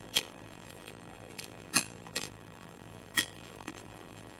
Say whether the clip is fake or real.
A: fake